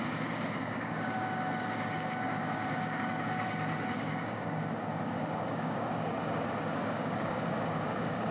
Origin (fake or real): fake